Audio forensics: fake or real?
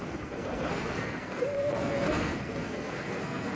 fake